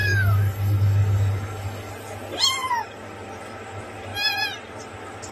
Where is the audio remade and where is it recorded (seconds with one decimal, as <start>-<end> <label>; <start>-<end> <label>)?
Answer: 0.0-1.9 remade; 1.9-5.3 recorded